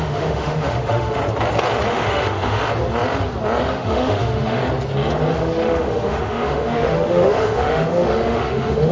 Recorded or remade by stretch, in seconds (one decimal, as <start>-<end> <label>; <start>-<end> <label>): 0.0-1.2 remade; 1.2-1.9 recorded; 1.9-2.6 remade; 2.6-3.7 recorded; 3.7-4.6 remade; 4.6-5.3 recorded; 5.3-8.9 remade